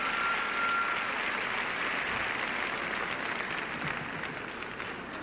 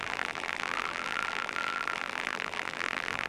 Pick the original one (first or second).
first